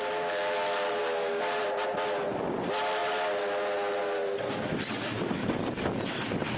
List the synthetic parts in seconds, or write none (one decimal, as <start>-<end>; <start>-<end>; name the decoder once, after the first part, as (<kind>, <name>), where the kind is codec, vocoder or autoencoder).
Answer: 1.0-1.6 (codec, DAC)